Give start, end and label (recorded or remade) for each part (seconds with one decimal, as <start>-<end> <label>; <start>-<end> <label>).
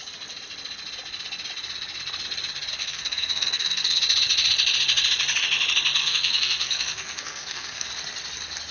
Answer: 0.0-2.8 recorded; 2.8-4.0 remade; 4.0-6.0 recorded; 6.0-7.9 remade; 7.9-8.7 recorded